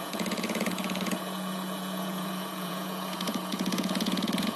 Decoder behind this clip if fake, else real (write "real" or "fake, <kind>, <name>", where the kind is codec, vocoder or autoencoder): fake, vocoder, Vocos